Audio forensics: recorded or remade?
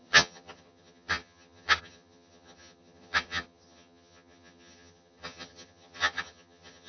remade